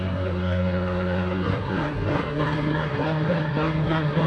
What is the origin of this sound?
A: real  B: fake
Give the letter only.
B